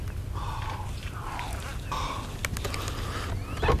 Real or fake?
real